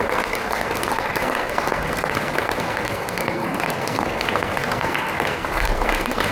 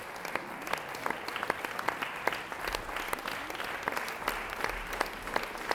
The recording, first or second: second